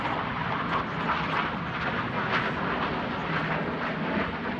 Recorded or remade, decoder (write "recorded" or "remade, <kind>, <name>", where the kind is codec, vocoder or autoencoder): recorded